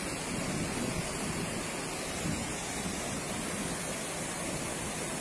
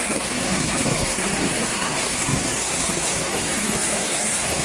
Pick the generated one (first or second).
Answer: second